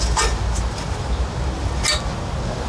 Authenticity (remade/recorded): recorded